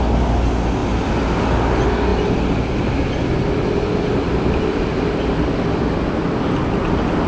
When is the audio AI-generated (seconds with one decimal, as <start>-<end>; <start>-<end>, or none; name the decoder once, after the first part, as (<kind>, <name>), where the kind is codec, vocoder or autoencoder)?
none